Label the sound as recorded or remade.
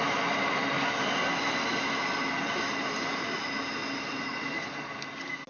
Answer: recorded